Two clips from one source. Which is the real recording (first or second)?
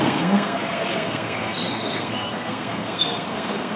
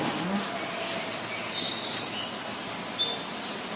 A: second